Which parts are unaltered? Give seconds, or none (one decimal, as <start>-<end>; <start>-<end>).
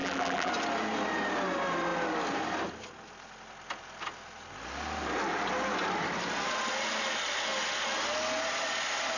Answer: 0.5-9.2